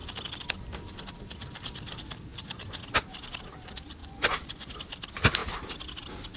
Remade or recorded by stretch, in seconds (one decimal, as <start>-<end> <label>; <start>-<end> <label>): 0.0-4.0 recorded; 4.0-4.7 remade; 4.7-6.4 recorded